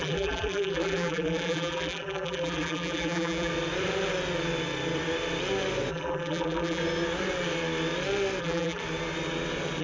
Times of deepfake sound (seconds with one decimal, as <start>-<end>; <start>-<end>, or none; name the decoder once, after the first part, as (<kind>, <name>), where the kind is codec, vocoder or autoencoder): 0.0-3.5 (vocoder, BigVGAN v2); 5.9-6.8; 8.4-8.8